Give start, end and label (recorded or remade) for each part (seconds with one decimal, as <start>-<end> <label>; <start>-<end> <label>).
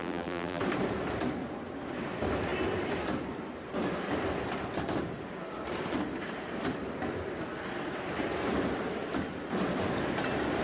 0.0-0.6 remade; 0.6-10.6 recorded